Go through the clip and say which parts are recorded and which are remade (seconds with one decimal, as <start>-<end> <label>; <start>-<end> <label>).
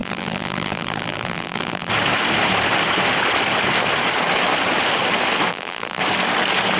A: 0.0-1.9 remade; 1.9-5.5 recorded; 5.5-6.0 remade; 6.0-6.8 recorded